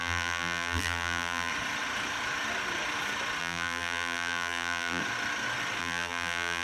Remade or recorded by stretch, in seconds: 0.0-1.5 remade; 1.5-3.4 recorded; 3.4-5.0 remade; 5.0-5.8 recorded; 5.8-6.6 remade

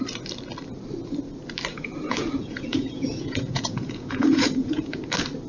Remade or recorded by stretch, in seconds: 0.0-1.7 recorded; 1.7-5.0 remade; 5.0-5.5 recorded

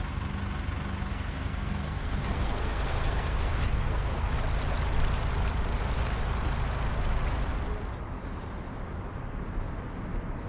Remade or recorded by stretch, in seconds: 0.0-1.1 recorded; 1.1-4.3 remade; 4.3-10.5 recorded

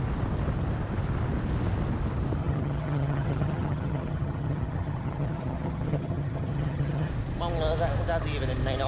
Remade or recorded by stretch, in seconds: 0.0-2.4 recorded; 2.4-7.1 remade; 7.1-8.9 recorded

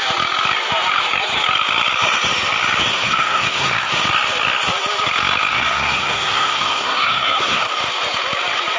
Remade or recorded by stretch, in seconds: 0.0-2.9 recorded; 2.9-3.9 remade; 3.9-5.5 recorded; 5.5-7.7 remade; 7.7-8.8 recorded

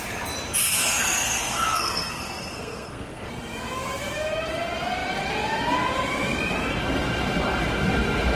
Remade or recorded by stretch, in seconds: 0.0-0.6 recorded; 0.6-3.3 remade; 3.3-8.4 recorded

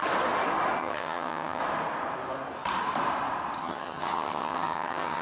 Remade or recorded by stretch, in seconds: 0.0-0.8 recorded; 0.8-1.6 remade; 1.6-3.6 recorded; 3.6-5.2 remade